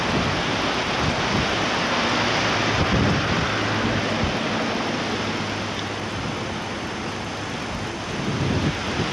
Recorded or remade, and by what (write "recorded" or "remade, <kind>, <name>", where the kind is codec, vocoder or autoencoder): recorded